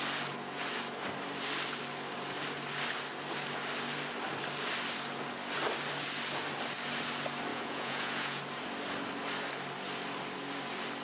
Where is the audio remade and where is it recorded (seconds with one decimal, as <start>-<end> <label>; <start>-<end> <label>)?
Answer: 0.0-7.5 recorded; 7.5-8.4 remade; 8.4-11.0 recorded